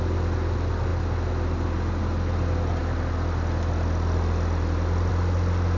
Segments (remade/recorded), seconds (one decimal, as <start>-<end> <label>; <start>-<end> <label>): 0.0-5.8 recorded

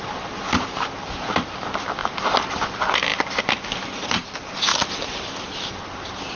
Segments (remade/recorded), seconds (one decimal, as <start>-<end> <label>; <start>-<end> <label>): 0.0-6.4 recorded